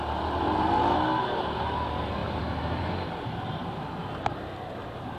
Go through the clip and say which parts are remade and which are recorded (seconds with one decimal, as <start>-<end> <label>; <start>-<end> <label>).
0.0-2.2 recorded; 2.2-2.9 remade; 2.9-5.2 recorded